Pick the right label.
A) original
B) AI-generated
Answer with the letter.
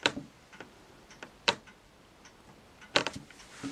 B